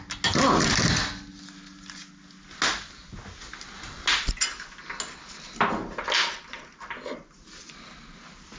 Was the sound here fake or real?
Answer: real